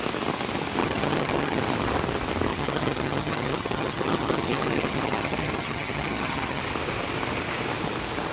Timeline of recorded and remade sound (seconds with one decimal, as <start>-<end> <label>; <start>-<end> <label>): 0.0-0.8 recorded; 0.8-1.6 remade; 1.6-2.5 recorded; 2.5-6.6 remade; 6.6-8.3 recorded